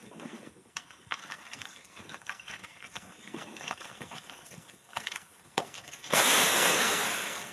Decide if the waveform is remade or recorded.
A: remade